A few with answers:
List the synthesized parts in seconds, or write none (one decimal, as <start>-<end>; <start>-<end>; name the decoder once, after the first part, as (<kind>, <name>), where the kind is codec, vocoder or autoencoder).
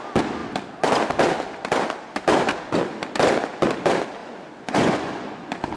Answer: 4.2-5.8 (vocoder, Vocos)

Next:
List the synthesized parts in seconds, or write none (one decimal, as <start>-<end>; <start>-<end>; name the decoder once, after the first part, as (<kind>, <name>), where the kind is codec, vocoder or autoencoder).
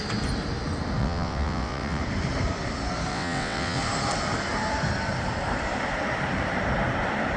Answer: 1.0-2.0 (vocoder, WaveNeXt); 3.1-3.8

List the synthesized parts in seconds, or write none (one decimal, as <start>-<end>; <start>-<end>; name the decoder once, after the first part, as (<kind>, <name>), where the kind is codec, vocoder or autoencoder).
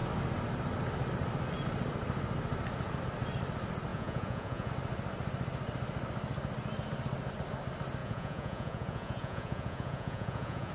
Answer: 3.9-4.7 (vocoder, Vocos); 8.0-10.7